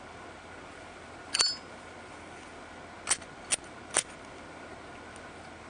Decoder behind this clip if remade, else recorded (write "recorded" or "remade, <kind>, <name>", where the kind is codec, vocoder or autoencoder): recorded